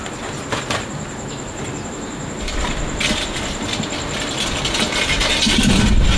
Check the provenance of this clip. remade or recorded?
recorded